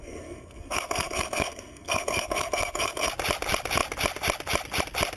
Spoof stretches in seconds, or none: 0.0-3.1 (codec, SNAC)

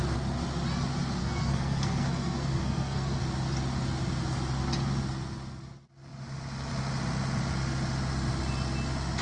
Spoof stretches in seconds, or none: 1.2-3.2 (codec, SNAC)

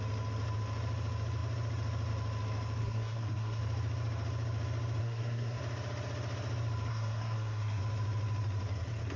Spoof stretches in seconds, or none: 2.8-3.6 (codec, SNAC); 5.0-5.6; 6.9-7.8

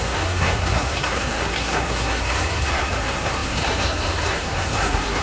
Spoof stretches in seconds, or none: 0.0-5.2 (codec, SNAC)

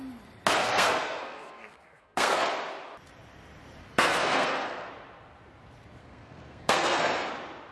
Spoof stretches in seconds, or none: 0.6-2.5 (codec, SNAC); 3.8-4.9; 6.0-7.3

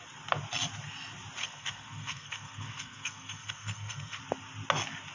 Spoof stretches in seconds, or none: 1.4-4.2 (codec, SNAC)